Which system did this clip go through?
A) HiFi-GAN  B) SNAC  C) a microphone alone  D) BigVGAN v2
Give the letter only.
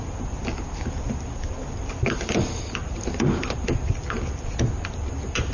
C